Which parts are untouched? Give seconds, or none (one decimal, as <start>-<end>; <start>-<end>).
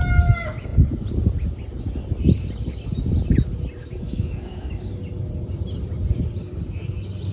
0.0-3.8; 4.7-7.3